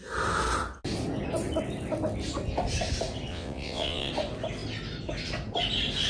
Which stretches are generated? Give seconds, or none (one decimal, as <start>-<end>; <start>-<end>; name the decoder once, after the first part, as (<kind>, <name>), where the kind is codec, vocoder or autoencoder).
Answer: 3.3-4.1 (vocoder, WaveNeXt)